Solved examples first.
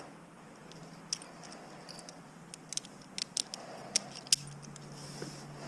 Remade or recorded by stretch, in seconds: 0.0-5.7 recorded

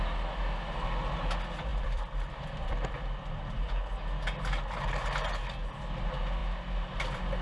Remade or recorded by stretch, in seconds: 0.0-1.7 recorded; 1.7-3.3 remade; 3.3-7.4 recorded

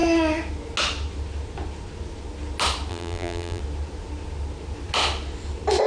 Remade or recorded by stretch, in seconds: 0.0-2.9 recorded; 2.9-3.6 remade; 3.6-5.9 recorded

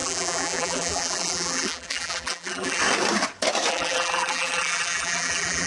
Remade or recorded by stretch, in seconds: 0.0-2.8 remade; 2.8-3.7 recorded; 3.7-5.7 remade

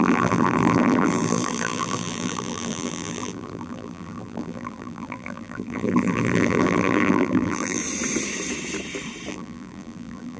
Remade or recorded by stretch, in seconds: 0.0-7.8 remade; 7.8-9.3 recorded; 9.3-10.4 remade